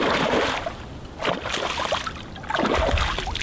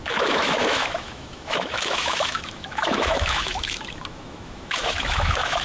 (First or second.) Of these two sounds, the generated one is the second